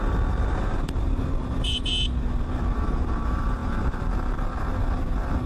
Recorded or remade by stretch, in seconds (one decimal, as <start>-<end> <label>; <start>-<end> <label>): 0.0-1.9 remade; 1.9-2.7 recorded; 2.7-5.5 remade